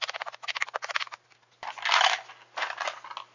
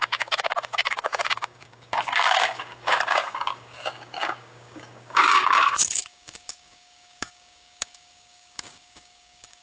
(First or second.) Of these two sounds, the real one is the first